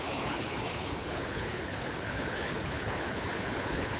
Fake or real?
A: fake